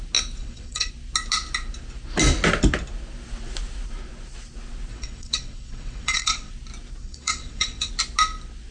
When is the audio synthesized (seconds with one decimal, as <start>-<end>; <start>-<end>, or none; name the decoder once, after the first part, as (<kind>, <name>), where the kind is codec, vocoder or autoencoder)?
0.4-0.9 (vocoder, WaveNeXt); 4.9-6.5; 7.0-7.9